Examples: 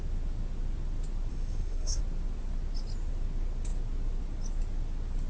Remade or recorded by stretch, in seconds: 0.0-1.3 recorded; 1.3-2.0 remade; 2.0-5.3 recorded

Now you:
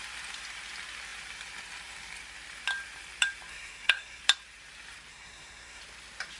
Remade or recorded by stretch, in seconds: 0.0-3.5 recorded; 3.5-4.2 remade; 4.2-5.1 recorded; 5.1-5.8 remade; 5.8-6.4 recorded

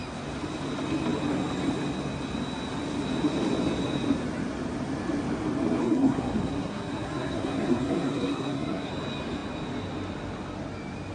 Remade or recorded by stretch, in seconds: 0.0-5.8 recorded; 5.8-8.9 remade; 8.9-11.1 recorded

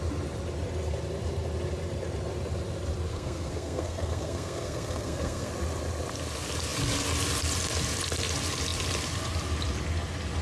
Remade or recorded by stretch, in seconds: 0.0-3.1 recorded; 3.1-5.5 remade; 5.5-10.4 recorded

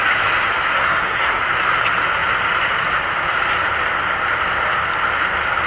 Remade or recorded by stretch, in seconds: 0.0-0.7 recorded; 0.7-1.4 remade; 1.4-5.7 recorded

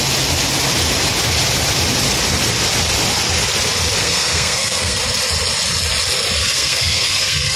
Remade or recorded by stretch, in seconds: 0.0-4.0 recorded; 4.0-5.0 remade; 5.0-6.4 recorded; 6.4-7.6 remade

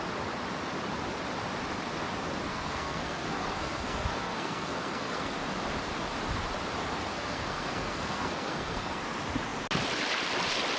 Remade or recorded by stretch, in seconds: 0.0-2.5 recorded; 2.5-5.3 remade; 5.3-7.1 recorded; 7.1-9.0 remade; 9.0-10.8 recorded